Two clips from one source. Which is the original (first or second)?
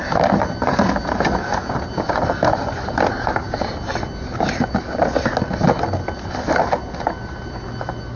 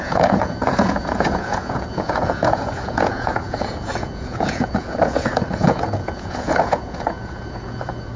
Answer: first